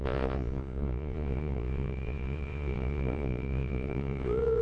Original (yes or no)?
no